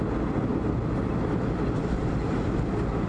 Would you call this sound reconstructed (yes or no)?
no